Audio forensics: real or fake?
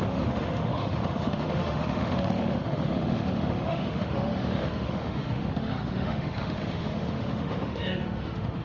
fake